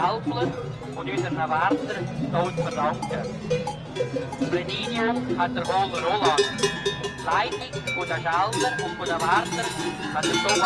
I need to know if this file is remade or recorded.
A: recorded